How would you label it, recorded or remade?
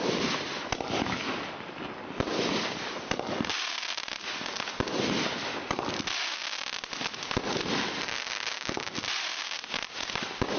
recorded